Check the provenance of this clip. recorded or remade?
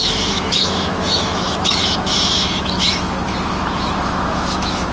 remade